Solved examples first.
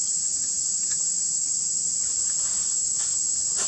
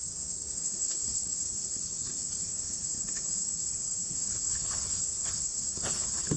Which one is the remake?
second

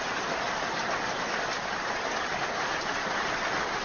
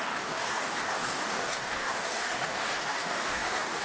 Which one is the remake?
second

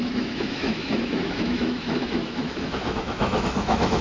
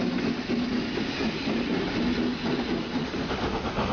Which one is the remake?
first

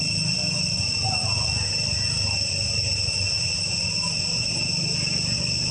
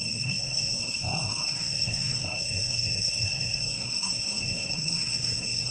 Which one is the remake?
second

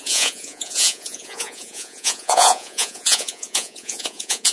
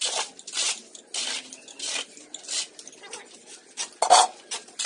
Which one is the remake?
first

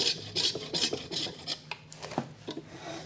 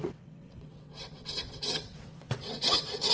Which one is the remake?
second